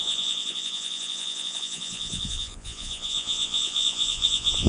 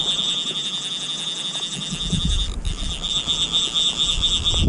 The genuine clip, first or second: second